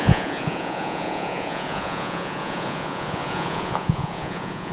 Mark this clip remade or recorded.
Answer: remade